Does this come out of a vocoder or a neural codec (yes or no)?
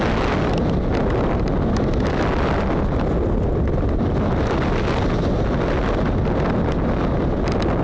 no